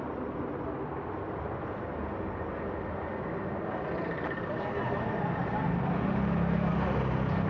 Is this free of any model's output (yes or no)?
yes